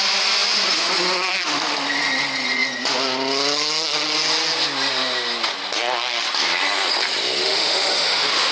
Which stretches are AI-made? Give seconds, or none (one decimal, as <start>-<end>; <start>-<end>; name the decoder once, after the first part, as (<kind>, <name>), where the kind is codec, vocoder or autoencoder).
7.4-8.5 (autoencoder, DAC-VAE)